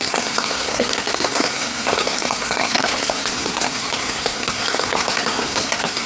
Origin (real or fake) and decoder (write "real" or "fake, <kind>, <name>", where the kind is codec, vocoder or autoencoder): fake, codec, SNAC